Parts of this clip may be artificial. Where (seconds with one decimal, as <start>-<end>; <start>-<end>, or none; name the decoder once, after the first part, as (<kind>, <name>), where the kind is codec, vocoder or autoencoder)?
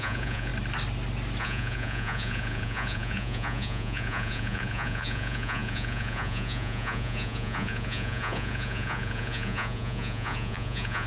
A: 0.0-0.5 (vocoder, Vocos); 1.4-11.1